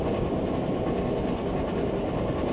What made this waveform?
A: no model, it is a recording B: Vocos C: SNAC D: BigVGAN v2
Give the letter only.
A